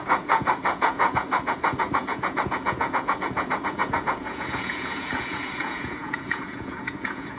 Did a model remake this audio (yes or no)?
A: yes